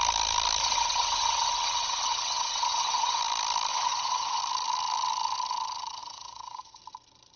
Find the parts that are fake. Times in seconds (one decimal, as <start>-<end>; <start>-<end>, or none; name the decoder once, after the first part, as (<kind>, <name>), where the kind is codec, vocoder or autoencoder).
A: 0.6-3.2 (vocoder, WaveNeXt); 3.7-4.4; 6.0-6.8

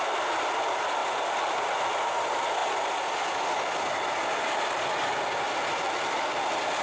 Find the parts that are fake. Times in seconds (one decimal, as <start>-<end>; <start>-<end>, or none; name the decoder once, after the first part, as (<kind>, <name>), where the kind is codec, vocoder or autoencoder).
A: none

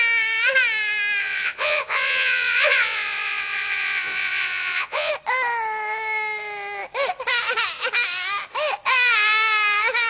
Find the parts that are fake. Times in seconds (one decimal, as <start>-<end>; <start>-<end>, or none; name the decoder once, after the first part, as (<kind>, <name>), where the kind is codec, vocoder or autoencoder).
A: 1.2-5.1 (vocoder, Vocos)

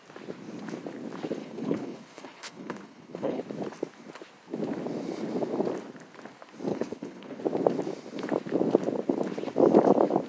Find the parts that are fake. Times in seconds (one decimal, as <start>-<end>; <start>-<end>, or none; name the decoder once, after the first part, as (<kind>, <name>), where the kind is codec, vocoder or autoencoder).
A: 1.4-3.4 (codec, HILCodec); 6.7-7.4

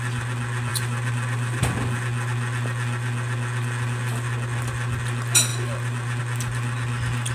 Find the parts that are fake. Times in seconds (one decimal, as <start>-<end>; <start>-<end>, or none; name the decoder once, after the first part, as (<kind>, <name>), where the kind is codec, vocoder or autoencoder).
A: 0.7-1.6 (vocoder, BigVGAN v2); 5.5-6.2

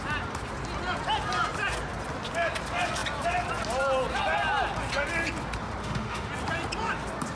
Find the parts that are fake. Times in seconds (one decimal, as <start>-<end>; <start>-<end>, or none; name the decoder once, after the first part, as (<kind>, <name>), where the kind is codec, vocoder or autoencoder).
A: 5.8-6.3 (autoencoder, DAC-VAE)

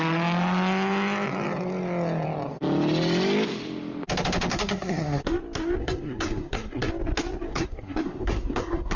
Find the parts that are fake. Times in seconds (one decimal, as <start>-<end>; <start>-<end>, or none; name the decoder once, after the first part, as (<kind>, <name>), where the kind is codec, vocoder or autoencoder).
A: 4.5-5.2 (codec, SNAC); 5.8-6.9; 7.5-9.0